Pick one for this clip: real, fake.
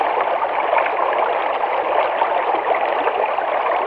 real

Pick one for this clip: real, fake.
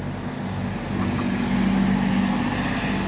real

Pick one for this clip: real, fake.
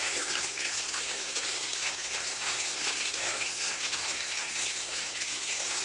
fake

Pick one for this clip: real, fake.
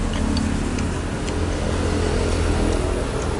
real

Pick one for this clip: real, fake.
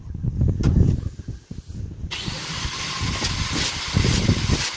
real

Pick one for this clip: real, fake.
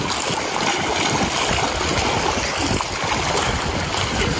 real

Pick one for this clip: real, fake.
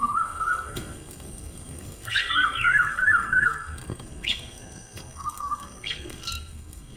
fake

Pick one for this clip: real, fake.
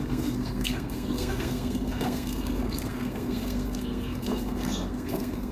fake